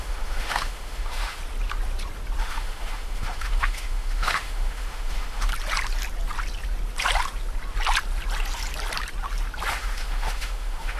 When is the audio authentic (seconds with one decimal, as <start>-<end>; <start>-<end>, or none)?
1.4-2.4; 5.5-9.7